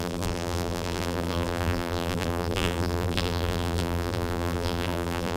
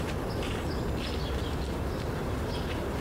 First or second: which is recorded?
second